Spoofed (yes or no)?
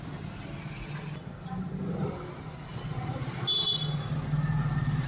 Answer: no